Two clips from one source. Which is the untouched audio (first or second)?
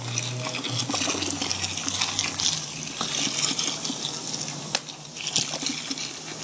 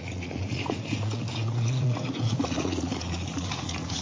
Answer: first